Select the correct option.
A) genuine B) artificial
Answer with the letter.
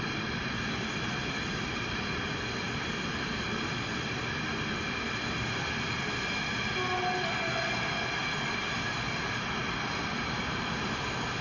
A